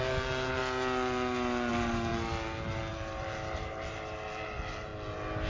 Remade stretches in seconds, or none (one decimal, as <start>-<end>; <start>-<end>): 0.0-0.6; 1.7-2.1; 2.9-4.9

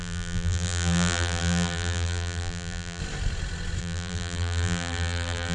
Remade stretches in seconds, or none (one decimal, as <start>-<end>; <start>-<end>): 0.0-3.0; 3.8-5.5

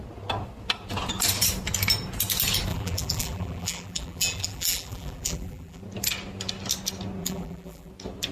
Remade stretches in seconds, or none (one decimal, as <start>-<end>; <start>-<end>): 2.7-5.8; 7.2-7.9

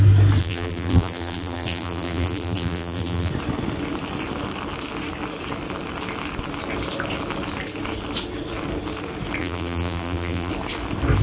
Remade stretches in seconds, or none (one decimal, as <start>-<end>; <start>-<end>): 0.4-3.3; 9.4-10.5

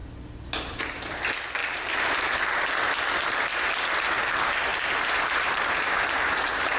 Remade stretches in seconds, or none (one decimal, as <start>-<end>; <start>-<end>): 1.6-2.3; 4.7-6.8

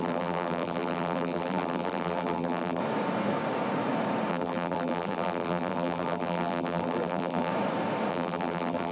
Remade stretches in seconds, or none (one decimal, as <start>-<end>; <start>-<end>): 0.0-2.8; 4.3-7.5; 8.1-8.9

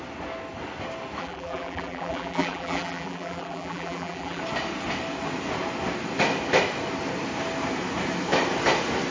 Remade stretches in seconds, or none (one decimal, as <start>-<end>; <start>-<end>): 1.2-4.4